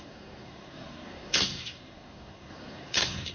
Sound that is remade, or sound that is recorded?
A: remade